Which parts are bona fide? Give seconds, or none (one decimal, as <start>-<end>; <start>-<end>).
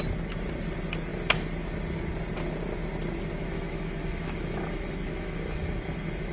0.0-3.4